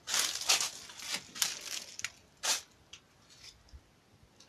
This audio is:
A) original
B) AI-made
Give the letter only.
A